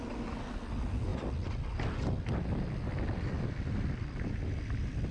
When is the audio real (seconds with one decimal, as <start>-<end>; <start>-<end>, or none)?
0.0-5.1